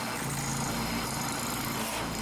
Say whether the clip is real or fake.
real